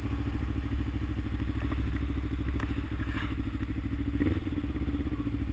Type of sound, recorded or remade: recorded